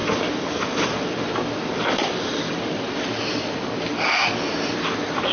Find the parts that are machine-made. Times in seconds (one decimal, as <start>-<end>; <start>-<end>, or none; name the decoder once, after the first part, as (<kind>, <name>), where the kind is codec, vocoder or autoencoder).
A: 0.0-3.2 (vocoder, BigVGAN v2)